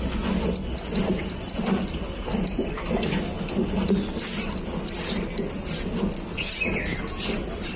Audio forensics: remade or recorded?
recorded